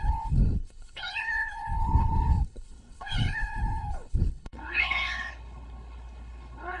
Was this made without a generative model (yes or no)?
no